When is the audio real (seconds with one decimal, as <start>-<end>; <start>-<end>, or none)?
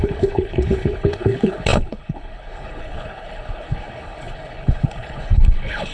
none